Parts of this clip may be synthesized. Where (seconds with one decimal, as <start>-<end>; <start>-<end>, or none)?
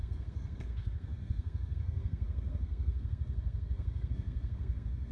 0.0-5.1